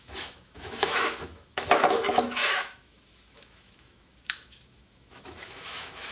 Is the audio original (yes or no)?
no